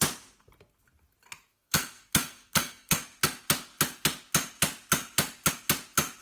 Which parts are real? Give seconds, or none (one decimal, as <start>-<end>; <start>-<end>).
0.0-1.5; 3.0-6.2